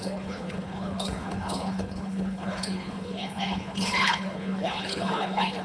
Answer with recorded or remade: remade